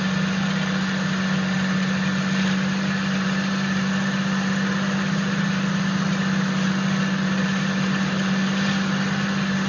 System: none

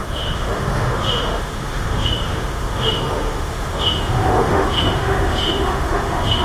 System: autoencoder, DAC-VAE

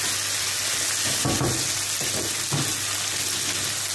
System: none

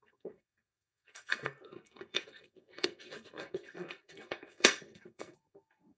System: codec, SNAC